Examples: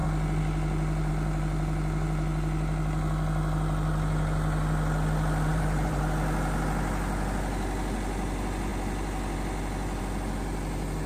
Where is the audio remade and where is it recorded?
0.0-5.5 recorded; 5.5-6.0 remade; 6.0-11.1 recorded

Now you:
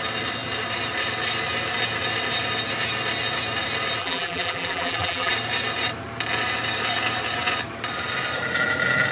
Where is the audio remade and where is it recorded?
0.0-4.0 recorded; 4.0-5.3 remade; 5.3-9.1 recorded

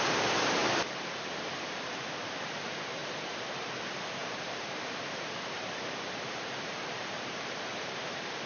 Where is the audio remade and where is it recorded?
0.0-0.6 recorded; 0.6-2.1 remade; 2.1-4.2 recorded; 4.2-8.0 remade; 8.0-8.5 recorded

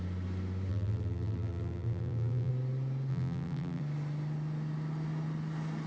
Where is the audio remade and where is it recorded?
0.0-0.7 recorded; 0.7-2.5 remade; 2.5-3.1 recorded; 3.1-3.8 remade; 3.8-5.9 recorded

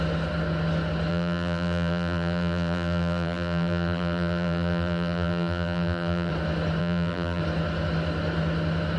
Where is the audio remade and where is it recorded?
0.0-1.1 recorded; 1.1-6.3 remade; 6.3-6.8 recorded; 6.8-7.4 remade; 7.4-9.0 recorded

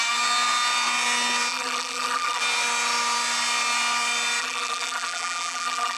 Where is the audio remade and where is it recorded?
0.0-1.5 recorded; 1.5-2.4 remade; 2.4-4.4 recorded; 4.4-6.0 remade

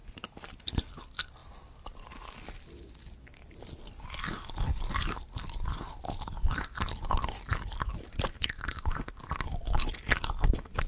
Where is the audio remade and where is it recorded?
0.0-0.9 remade; 0.9-7.5 recorded; 7.5-9.9 remade; 9.9-10.9 recorded